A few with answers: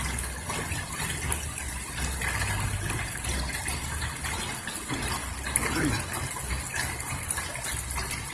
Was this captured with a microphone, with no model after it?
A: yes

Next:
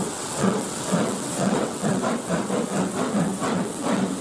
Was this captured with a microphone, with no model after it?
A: no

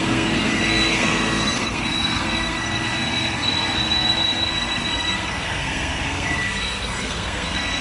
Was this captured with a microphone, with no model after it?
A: no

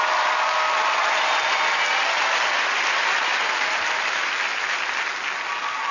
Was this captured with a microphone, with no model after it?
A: yes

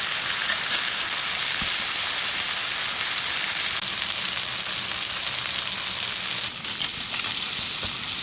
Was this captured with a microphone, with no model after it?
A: yes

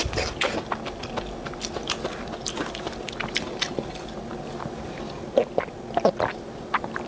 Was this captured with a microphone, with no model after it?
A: yes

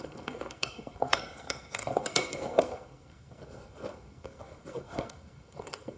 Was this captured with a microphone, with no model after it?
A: no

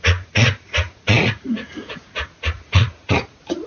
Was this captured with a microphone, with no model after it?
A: no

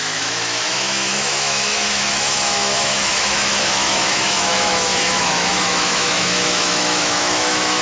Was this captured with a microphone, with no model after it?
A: no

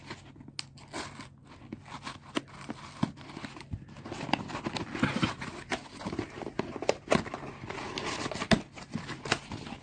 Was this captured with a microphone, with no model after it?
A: yes